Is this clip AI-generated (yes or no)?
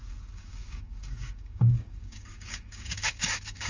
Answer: yes